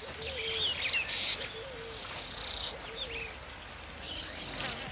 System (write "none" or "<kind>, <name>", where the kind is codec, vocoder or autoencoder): none